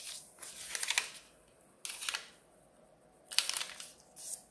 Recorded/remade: recorded